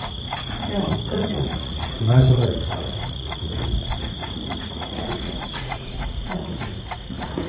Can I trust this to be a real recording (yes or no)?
no